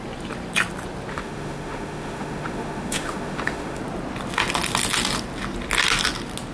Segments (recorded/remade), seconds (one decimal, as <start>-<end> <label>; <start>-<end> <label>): 0.0-1.1 recorded; 1.1-3.8 remade; 3.8-6.5 recorded